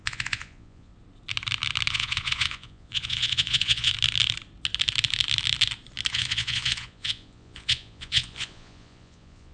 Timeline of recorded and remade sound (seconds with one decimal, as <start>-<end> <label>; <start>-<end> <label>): 0.0-0.9 remade; 0.9-1.9 recorded; 1.9-3.9 remade; 3.9-6.1 recorded; 6.1-9.5 remade